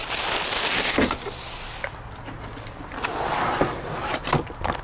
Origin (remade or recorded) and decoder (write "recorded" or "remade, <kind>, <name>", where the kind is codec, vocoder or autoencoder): recorded